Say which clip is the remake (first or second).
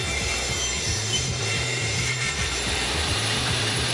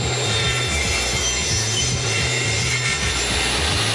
first